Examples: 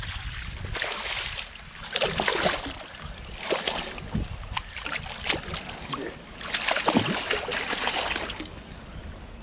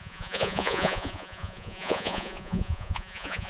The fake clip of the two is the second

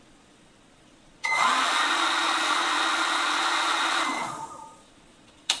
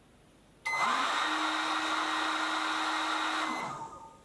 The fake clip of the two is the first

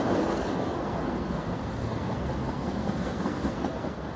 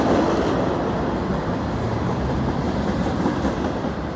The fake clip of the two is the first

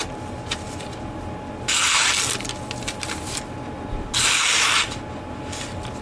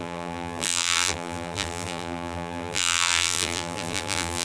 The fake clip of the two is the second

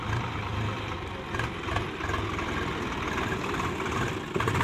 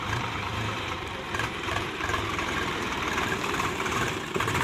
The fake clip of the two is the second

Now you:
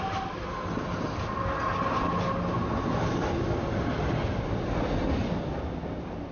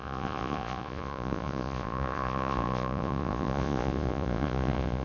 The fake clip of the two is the second